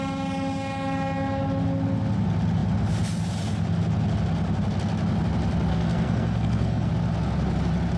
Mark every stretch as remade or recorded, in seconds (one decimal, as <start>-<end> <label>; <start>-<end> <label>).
0.0-5.7 recorded; 5.7-6.9 remade; 6.9-8.0 recorded